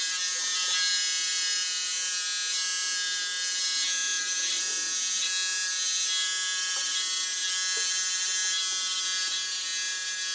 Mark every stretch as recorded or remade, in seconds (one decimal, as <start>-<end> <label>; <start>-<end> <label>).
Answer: 0.0-10.3 recorded